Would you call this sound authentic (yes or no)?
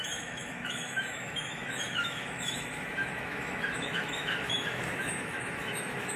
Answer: no